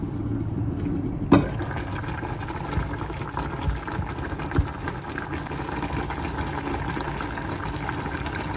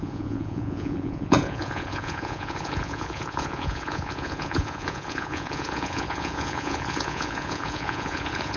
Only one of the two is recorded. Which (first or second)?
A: first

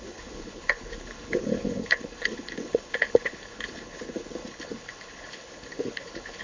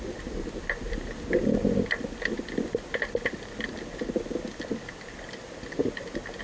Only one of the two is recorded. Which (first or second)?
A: second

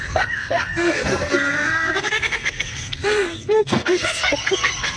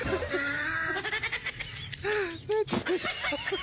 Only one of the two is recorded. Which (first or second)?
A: second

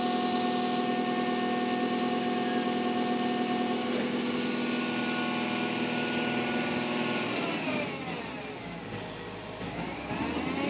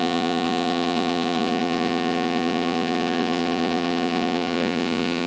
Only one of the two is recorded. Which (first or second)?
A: first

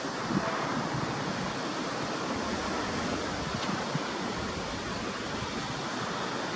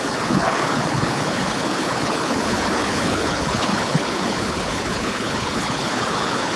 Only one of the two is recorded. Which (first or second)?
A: first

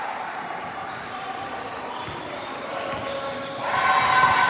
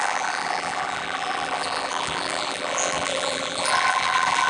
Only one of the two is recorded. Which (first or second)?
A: first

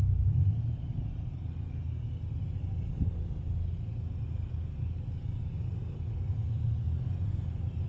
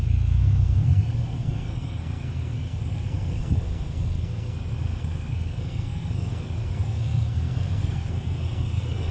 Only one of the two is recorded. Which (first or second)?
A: first